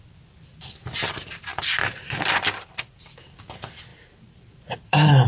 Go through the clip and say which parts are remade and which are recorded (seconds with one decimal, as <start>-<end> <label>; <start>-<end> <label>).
0.0-3.9 recorded; 3.9-5.3 remade